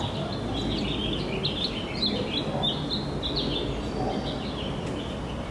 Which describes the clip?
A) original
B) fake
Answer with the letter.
A